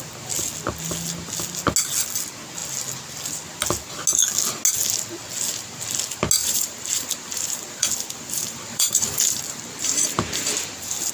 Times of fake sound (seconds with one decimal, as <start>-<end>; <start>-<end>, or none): 6.4-11.1